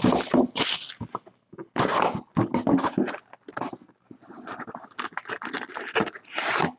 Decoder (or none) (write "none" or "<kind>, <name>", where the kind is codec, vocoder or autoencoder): none